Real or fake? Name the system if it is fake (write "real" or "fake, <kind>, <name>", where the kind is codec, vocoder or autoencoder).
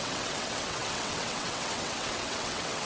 fake, vocoder, WaveNeXt